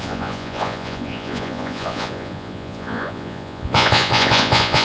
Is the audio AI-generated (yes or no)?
yes